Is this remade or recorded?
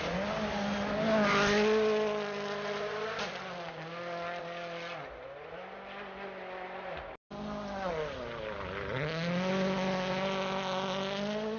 recorded